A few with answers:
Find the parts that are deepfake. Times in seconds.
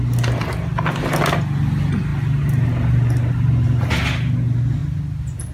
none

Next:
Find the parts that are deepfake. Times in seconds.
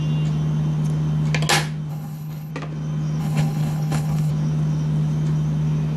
1.9-2.5 (codec, HILCodec); 3.2-4.3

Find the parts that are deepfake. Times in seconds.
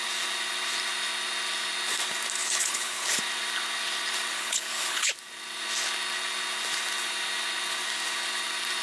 2.4-3.2 (codec, HILCodec); 4.3-5.1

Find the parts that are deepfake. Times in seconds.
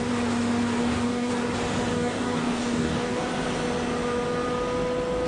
0.8-1.3 (codec, DAC); 1.9-3.2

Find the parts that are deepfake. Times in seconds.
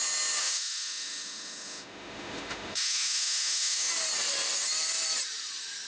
0.4-3.9 (autoencoder, DAC-VAE)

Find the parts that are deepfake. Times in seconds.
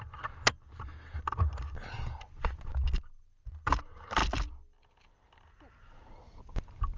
none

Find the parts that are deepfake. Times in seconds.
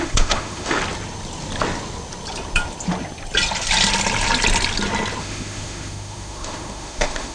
0.0-0.8 (autoencoder, DAC-VAE); 5.2-7.3